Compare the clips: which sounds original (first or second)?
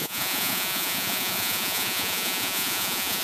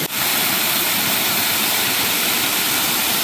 second